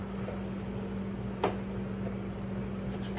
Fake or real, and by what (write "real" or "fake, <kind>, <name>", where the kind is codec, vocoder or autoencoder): real